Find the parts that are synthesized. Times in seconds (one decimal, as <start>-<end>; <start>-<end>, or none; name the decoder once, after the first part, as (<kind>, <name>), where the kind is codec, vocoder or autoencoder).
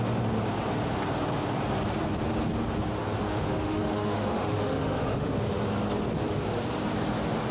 3.2-5.3 (autoencoder, DAC-VAE)